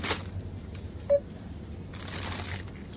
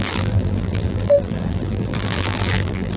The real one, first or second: first